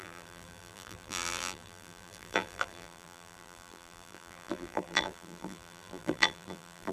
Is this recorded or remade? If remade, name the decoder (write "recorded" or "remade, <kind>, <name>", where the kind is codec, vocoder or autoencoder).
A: remade, vocoder, BigVGAN v2